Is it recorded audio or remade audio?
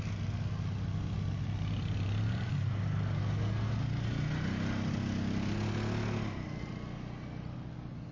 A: recorded